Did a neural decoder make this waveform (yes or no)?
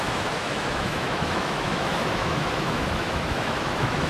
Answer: yes